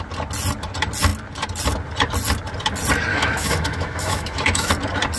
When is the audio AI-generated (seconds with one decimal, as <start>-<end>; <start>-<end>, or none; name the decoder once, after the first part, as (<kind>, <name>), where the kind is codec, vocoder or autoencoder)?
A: 3.1-4.7 (autoencoder, DAC-VAE)